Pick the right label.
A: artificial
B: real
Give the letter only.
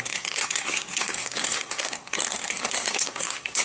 A